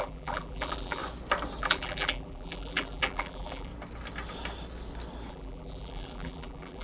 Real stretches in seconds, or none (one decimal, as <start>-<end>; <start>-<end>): 1.0-1.6; 3.7-5.3

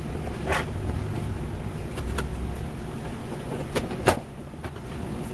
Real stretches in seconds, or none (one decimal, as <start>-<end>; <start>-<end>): 0.0-3.2

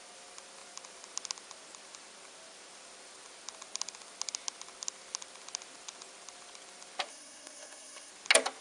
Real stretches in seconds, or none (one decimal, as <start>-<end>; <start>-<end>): 0.0-7.1; 8.1-8.6

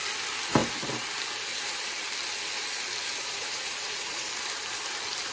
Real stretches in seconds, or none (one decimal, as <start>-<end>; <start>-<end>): 0.0-3.0; 4.3-5.3

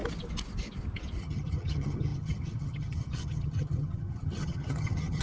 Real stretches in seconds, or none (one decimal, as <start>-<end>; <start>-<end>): 0.0-1.2